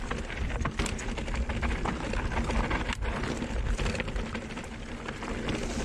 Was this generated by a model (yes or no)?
no